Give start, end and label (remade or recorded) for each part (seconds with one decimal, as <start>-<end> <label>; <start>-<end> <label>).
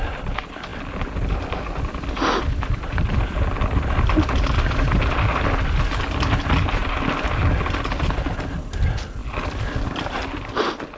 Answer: 0.0-11.0 recorded